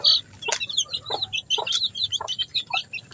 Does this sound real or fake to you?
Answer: real